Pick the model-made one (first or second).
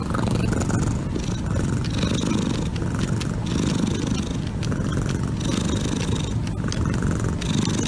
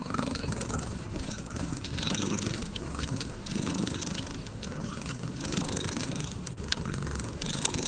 second